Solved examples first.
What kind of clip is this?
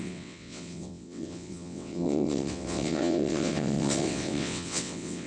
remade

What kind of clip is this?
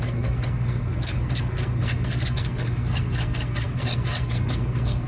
remade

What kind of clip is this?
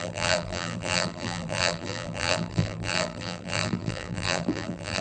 remade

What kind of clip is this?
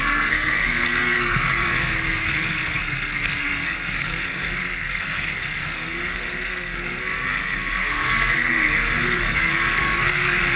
remade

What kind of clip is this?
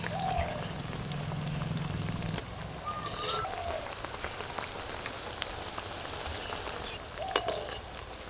recorded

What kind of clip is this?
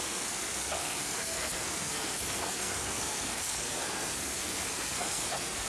remade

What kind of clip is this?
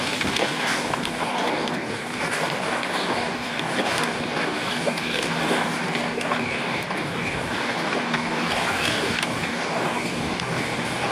remade